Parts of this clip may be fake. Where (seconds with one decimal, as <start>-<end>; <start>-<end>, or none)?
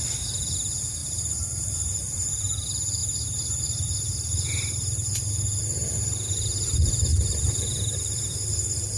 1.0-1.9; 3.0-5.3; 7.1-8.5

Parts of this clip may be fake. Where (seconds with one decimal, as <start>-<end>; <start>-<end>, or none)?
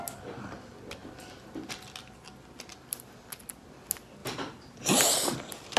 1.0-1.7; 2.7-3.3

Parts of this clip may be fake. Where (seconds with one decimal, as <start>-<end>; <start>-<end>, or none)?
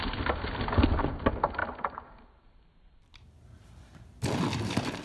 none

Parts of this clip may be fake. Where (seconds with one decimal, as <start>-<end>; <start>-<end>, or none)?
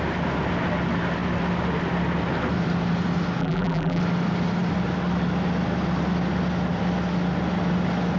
3.4-4.0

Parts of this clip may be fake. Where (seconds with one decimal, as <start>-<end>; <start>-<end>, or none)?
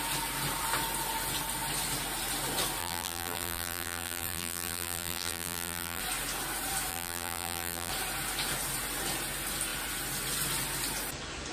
2.8-6.0; 6.9-7.9